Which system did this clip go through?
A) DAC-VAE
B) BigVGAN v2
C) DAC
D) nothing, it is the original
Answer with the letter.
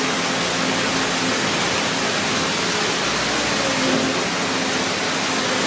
D